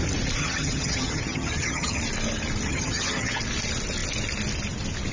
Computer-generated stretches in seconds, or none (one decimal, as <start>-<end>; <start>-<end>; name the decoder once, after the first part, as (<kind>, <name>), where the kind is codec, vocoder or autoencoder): 0.4-2.0 (vocoder, HiFi-GAN); 2.7-3.4